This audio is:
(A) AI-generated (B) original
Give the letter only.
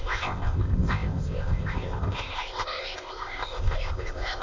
A